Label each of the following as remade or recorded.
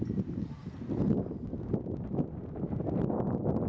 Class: recorded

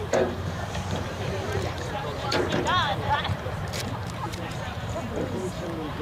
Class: remade